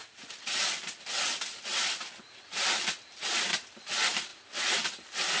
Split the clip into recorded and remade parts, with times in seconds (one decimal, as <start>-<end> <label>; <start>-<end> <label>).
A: 0.0-5.4 recorded

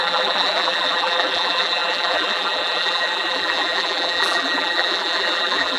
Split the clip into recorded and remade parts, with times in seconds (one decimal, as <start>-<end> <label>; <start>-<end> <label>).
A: 0.0-5.8 remade

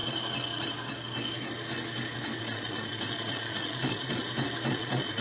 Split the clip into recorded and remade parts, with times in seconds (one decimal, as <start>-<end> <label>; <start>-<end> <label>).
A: 0.0-2.4 recorded; 2.4-4.2 remade; 4.2-4.7 recorded; 4.7-5.2 remade